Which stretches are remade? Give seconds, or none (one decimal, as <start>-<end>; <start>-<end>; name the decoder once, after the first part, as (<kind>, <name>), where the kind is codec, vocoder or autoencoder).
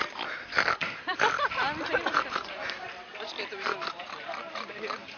none